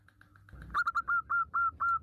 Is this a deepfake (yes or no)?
no